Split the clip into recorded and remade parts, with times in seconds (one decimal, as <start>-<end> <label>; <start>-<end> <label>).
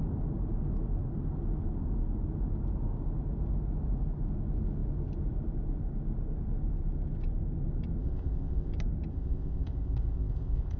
0.0-8.0 recorded; 8.0-8.7 remade; 8.7-9.1 recorded; 9.1-10.8 remade